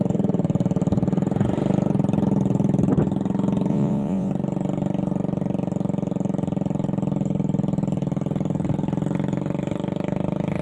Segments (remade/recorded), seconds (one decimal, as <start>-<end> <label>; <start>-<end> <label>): 0.0-3.7 recorded; 3.7-4.3 remade; 4.3-10.6 recorded